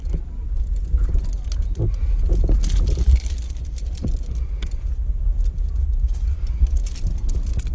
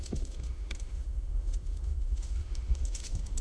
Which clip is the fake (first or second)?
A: second